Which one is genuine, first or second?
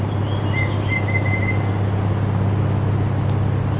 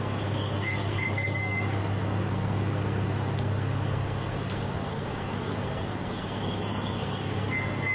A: first